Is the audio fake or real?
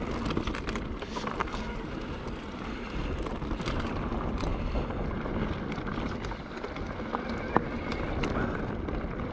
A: real